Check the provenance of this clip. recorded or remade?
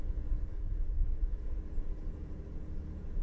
remade